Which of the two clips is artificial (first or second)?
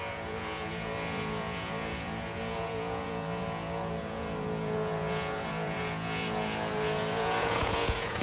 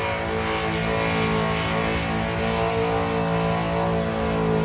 first